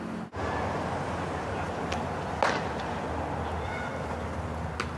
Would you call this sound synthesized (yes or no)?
no